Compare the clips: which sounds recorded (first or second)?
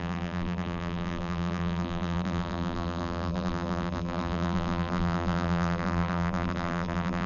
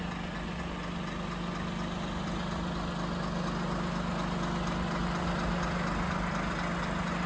second